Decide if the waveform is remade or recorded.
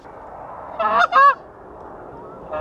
recorded